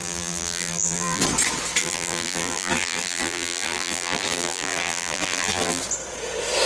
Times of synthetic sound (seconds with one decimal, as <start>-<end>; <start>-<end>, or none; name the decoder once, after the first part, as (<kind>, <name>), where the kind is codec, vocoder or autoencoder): 0.0-1.2 (vocoder, BigVGAN v2); 1.8-5.8

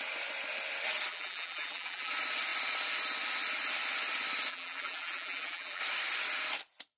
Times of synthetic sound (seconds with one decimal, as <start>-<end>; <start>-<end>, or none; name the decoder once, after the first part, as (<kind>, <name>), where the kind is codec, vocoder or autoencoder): 1.1-2.1 (vocoder, BigVGAN v2); 4.5-5.8

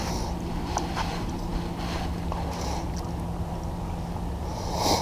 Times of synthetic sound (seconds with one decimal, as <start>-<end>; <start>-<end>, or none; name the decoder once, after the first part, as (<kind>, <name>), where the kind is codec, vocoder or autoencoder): 0.9-1.5 (vocoder, BigVGAN v2); 4.5-5.0

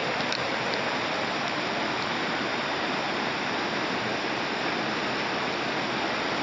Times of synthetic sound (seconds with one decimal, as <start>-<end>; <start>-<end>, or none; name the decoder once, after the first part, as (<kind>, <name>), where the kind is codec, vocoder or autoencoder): 0.0-3.5 (vocoder, BigVGAN v2)